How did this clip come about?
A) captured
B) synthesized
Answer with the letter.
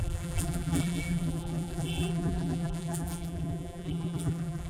B